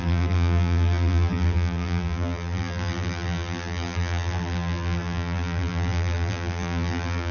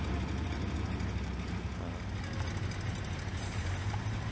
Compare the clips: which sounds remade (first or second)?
first